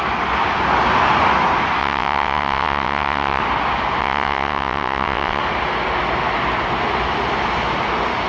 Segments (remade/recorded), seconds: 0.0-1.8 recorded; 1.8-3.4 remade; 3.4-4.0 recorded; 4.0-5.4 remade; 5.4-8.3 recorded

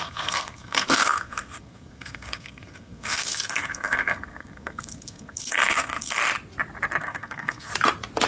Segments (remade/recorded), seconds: 0.0-6.2 remade; 6.2-7.0 recorded; 7.0-7.7 remade; 7.7-8.3 recorded